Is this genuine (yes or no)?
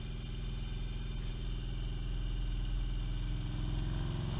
yes